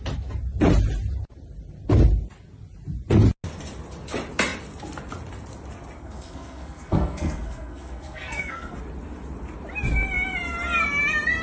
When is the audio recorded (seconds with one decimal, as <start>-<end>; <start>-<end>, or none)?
0.0-6.0; 8.7-11.4